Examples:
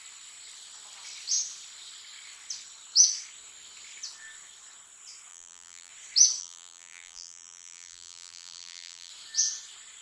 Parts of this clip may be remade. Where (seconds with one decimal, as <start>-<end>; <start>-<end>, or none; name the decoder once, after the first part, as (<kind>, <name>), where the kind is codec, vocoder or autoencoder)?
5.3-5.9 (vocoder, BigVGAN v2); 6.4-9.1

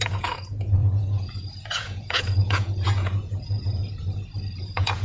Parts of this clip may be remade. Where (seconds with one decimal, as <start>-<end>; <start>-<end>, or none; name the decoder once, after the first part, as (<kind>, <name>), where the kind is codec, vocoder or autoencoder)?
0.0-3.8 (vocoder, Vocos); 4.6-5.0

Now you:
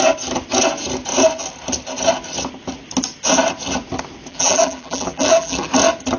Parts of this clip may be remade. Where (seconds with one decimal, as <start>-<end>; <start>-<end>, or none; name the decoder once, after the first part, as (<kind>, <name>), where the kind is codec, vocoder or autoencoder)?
4.3-5.7 (vocoder, BigVGAN v2)

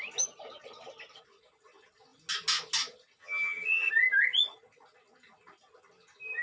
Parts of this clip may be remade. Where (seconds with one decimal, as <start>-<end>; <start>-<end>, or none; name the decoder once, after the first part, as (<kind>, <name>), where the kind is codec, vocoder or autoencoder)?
3.2-3.9 (vocoder, HiFi-GAN)

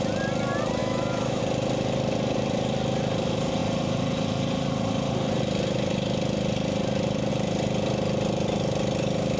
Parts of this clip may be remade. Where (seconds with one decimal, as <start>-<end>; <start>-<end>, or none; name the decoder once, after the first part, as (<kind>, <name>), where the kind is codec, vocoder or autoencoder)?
0.8-1.4 (autoencoder, DAC-VAE)

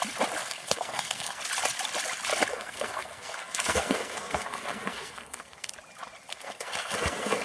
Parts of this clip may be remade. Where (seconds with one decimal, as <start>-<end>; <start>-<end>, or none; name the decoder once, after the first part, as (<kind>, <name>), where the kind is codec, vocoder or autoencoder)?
0.4-1.4 (codec, SNAC); 2.5-5.7; 6.3-7.4

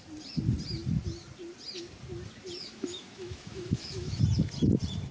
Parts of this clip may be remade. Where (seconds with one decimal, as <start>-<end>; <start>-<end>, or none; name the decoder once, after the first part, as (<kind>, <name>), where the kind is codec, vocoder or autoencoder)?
2.6-4.2 (autoencoder, DAC-VAE)